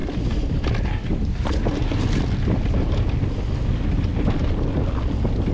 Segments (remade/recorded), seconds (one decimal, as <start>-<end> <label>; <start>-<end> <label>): 0.0-5.5 recorded